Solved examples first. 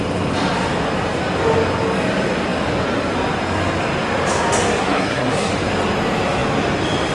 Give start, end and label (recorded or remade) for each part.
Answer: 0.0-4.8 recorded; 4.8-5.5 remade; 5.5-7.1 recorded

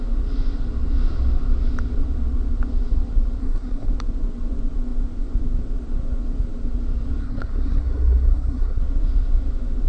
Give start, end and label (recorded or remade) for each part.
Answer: 0.0-3.4 recorded; 3.4-3.9 remade; 3.9-7.2 recorded; 7.2-8.8 remade; 8.8-9.9 recorded

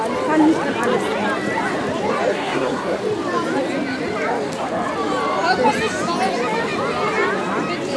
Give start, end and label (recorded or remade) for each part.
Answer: 0.0-2.3 recorded; 2.3-3.0 remade; 3.0-8.0 recorded

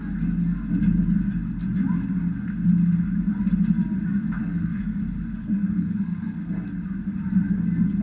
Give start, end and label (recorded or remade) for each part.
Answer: 0.0-4.4 recorded; 4.4-5.0 remade; 5.0-5.4 recorded; 5.4-6.5 remade; 6.5-8.0 recorded

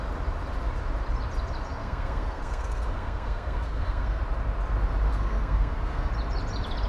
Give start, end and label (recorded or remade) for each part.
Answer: 0.0-1.8 recorded; 1.8-4.2 remade; 4.2-5.1 recorded; 5.1-6.1 remade; 6.1-6.9 recorded